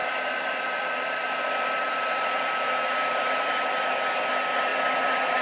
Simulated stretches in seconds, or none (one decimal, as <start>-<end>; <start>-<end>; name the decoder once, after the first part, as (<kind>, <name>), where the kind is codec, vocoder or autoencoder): 0.0-3.2 (vocoder, BigVGAN v2); 4.7-5.4